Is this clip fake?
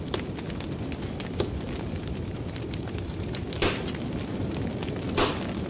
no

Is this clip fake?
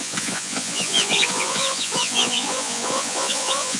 yes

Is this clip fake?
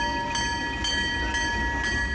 no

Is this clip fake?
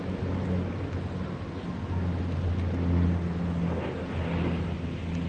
no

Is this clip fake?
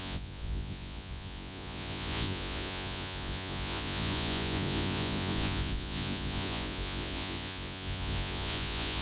yes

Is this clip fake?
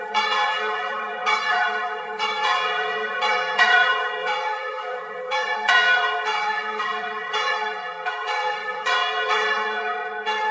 yes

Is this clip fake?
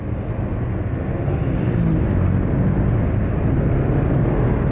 no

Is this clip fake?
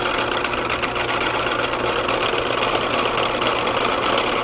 no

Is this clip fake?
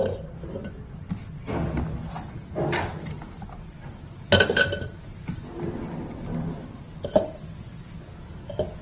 no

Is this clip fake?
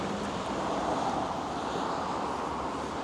no